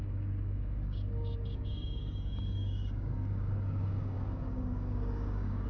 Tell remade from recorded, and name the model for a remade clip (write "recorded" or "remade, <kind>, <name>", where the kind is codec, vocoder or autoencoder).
remade, codec, DAC